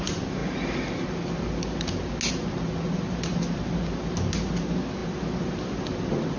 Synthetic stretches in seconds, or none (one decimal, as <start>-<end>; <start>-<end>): none